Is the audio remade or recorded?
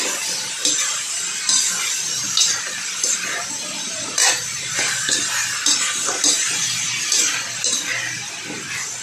recorded